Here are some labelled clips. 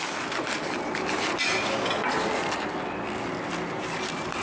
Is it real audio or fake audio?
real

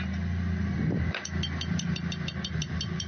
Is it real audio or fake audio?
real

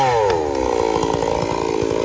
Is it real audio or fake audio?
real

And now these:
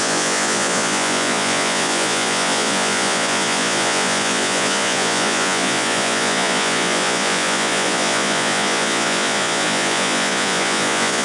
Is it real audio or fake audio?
fake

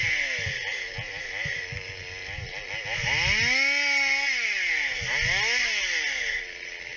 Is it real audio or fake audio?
real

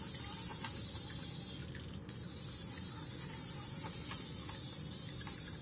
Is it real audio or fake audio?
real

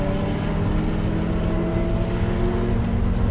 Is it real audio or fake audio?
real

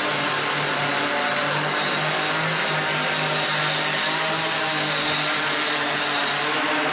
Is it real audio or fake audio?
real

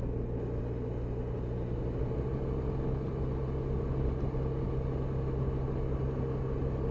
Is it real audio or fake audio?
real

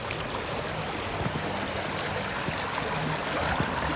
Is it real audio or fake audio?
real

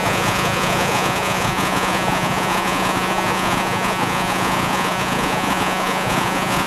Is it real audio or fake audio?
fake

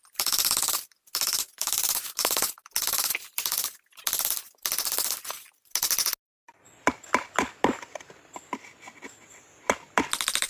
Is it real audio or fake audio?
real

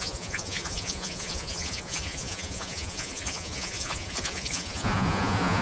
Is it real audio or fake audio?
fake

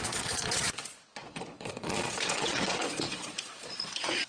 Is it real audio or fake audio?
fake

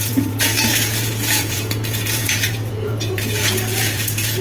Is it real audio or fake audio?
fake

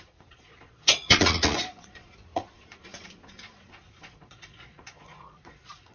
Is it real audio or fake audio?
fake